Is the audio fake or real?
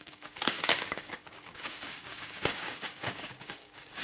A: fake